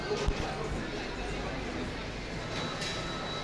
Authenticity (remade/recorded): recorded